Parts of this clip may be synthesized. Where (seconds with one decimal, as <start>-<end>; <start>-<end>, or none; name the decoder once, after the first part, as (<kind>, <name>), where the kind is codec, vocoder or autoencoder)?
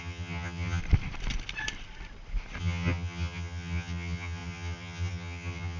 0.0-0.8 (vocoder, HiFi-GAN); 2.6-5.8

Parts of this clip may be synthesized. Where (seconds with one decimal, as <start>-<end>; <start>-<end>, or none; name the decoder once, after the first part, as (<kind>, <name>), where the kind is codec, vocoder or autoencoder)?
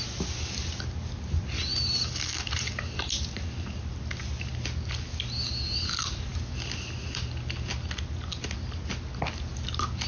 none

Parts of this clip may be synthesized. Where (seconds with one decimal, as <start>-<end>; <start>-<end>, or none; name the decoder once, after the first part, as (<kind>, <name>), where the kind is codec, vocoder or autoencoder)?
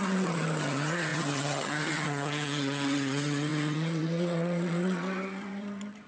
0.0-6.1 (vocoder, HiFi-GAN)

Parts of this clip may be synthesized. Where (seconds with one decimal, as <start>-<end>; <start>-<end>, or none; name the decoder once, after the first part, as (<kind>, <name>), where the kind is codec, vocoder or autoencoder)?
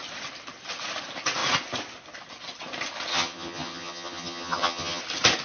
3.1-5.0 (vocoder, HiFi-GAN)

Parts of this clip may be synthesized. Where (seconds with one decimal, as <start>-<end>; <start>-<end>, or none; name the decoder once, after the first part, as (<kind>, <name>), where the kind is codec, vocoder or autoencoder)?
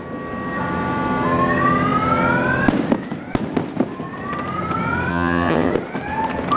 5.1-5.7 (vocoder, HiFi-GAN)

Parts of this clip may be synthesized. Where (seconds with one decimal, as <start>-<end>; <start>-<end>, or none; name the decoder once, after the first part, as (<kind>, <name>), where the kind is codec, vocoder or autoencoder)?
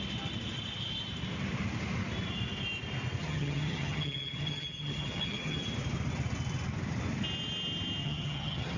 3.2-5.6 (vocoder, HiFi-GAN); 8.0-8.8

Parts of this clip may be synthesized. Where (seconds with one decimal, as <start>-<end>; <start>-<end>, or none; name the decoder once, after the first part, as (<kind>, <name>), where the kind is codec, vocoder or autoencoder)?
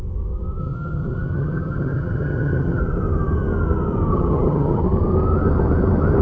0.6-2.8 (vocoder, HiFi-GAN); 4.1-4.8